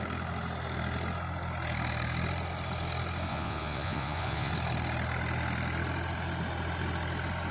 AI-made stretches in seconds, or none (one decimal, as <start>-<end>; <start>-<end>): 3.3-4.5